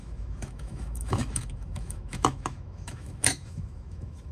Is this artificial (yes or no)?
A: yes